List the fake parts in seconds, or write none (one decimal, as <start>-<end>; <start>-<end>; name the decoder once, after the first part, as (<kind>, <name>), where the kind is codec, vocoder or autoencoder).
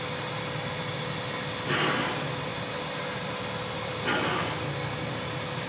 none